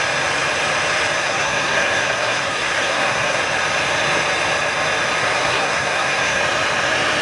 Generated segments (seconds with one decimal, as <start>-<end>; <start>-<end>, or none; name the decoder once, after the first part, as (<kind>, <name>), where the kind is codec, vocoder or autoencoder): 1.2-3.4 (codec, SNAC); 5.2-6.4